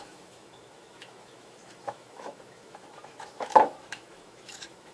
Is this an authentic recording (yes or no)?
no